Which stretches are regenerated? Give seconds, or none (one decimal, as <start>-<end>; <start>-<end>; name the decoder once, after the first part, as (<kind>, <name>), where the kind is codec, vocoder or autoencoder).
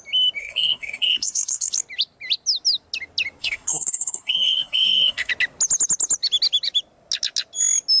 0.4-1.7 (codec, SNAC); 3.4-5.3